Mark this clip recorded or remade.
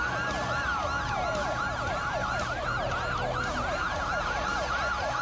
recorded